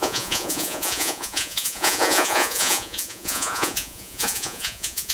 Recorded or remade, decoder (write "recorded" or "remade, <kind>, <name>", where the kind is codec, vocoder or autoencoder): remade, vocoder, Vocos